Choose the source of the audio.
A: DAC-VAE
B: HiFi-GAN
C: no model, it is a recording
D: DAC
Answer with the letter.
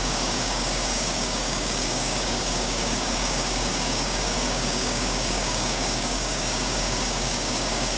D